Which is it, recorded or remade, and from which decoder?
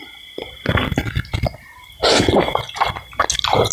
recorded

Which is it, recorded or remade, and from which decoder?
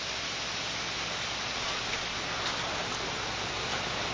remade, vocoder, BigVGAN v2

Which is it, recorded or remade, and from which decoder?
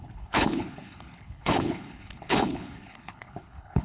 remade, codec, HILCodec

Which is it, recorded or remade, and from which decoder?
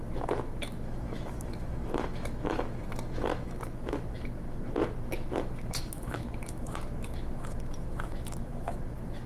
remade, autoencoder, DAC-VAE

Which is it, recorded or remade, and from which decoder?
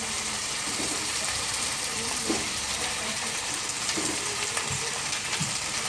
remade, vocoder, BigVGAN v2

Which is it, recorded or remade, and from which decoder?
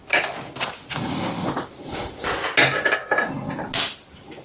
recorded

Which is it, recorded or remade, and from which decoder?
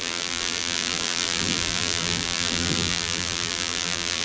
remade, vocoder, BigVGAN v2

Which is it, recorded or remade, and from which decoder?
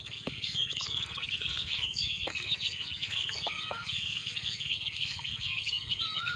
remade, codec, SNAC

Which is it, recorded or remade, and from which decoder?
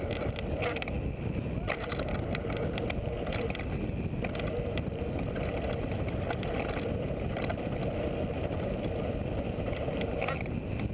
recorded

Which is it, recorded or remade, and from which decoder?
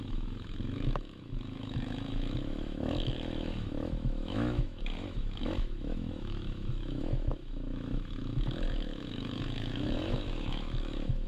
remade, autoencoder, DAC-VAE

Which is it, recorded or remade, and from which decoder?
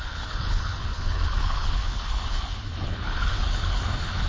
remade, codec, HILCodec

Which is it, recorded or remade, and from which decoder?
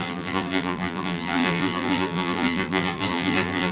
remade, vocoder, BigVGAN v2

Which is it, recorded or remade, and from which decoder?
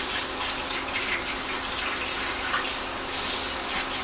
recorded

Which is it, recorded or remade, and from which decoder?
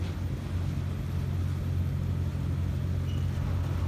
recorded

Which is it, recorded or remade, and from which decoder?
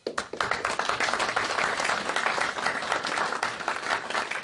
recorded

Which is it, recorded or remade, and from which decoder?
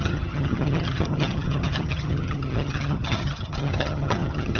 remade, vocoder, HiFi-GAN